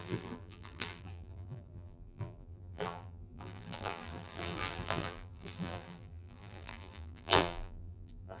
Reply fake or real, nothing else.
fake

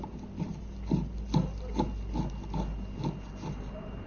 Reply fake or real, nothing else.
real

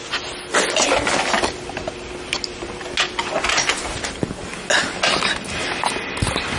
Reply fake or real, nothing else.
real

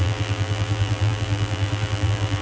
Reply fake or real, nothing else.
fake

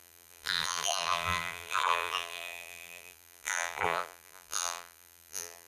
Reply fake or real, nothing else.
fake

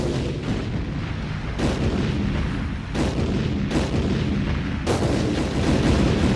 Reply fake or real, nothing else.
real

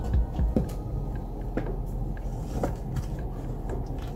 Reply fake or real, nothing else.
real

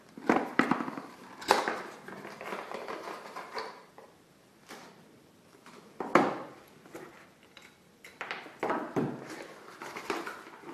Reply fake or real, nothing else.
fake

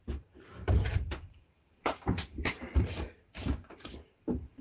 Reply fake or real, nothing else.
fake